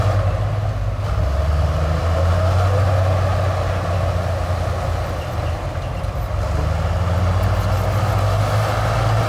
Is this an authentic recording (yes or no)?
yes